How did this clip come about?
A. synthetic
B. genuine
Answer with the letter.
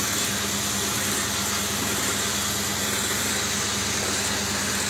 B